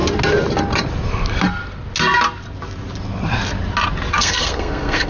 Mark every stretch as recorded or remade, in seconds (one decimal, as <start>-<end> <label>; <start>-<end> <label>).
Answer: 0.0-4.1 recorded; 4.1-5.1 remade